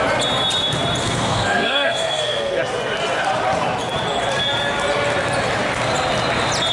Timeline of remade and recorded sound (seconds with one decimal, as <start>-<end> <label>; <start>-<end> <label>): 0.0-1.0 recorded; 1.0-2.6 remade; 2.6-6.7 recorded